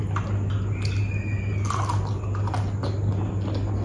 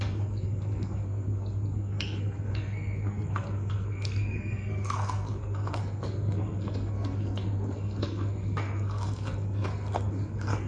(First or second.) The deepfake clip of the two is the second